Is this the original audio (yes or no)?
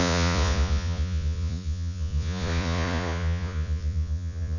no